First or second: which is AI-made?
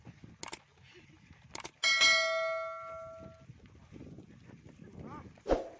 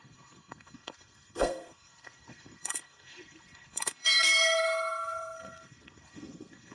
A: second